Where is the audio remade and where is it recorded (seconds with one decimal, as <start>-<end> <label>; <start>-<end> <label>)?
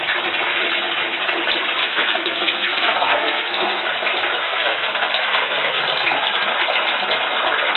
0.0-1.8 recorded; 1.8-3.8 remade; 3.8-4.4 recorded; 4.4-5.8 remade; 5.8-7.8 recorded